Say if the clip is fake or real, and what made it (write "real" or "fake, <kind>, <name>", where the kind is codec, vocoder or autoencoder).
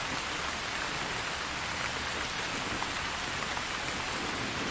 real